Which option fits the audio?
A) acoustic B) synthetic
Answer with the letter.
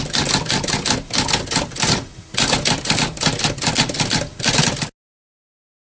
A